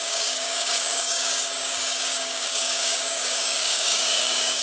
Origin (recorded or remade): remade